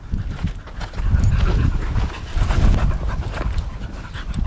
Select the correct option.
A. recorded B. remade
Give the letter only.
A